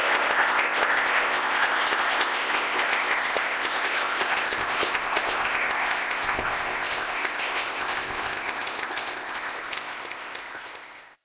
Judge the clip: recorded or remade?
remade